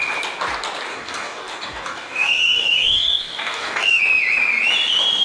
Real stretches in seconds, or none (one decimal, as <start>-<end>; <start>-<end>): 0.0-0.9; 4.0-5.2